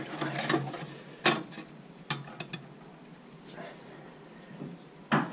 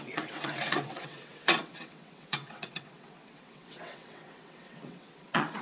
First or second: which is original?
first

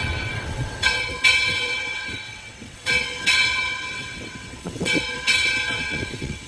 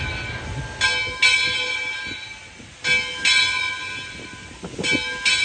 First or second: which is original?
second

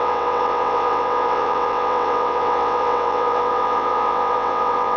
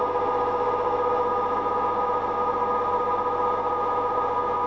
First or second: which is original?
second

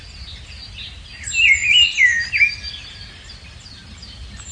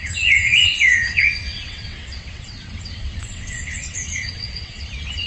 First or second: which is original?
first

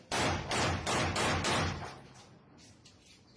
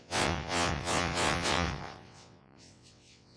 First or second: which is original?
first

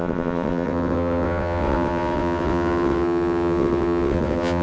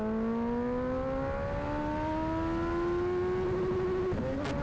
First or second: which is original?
second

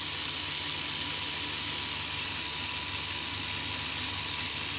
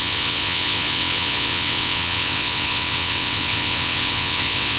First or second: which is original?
first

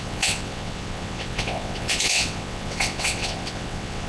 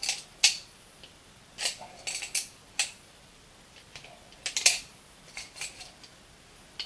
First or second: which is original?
second